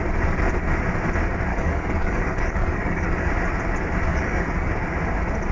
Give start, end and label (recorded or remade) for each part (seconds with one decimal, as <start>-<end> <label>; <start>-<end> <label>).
0.0-1.5 recorded; 1.5-3.3 remade; 3.3-4.1 recorded; 4.1-4.7 remade; 4.7-5.5 recorded